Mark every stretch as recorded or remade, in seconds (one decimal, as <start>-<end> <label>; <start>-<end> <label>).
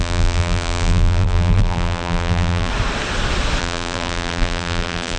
0.0-2.7 remade; 2.7-3.6 recorded; 3.6-5.2 remade